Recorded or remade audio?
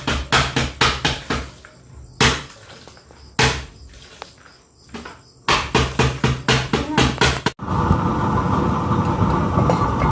recorded